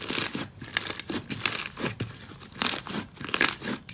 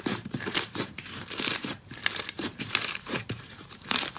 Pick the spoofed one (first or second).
second